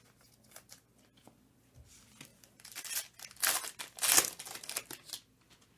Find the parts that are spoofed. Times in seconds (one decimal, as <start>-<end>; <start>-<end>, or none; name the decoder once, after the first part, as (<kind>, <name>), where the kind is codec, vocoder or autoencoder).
none